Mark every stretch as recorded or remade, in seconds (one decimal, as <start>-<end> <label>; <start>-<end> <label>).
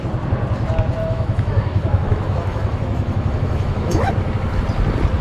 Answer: 0.0-1.0 recorded; 1.0-4.1 remade; 4.1-5.2 recorded